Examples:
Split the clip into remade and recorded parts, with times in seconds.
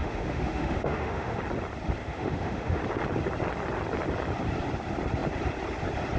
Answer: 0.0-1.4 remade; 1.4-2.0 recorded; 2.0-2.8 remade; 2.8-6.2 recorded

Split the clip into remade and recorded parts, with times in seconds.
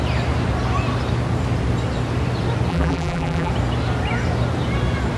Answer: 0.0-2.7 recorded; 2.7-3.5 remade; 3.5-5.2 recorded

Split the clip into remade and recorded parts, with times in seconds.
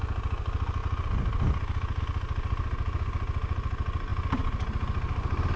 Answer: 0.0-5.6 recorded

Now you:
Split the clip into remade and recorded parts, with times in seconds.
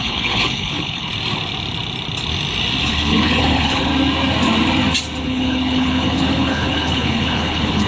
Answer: 0.0-1.1 remade; 1.1-2.8 recorded; 2.8-3.9 remade; 3.9-5.2 recorded; 5.2-7.9 remade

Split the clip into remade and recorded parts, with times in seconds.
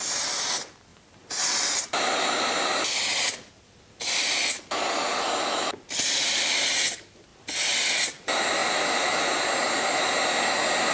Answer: 0.0-0.9 recorded; 0.9-2.2 remade; 2.2-8.6 recorded; 8.6-9.4 remade; 9.4-10.9 recorded